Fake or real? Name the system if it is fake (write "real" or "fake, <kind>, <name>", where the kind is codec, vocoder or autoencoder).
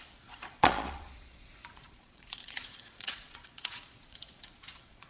fake, vocoder, Vocos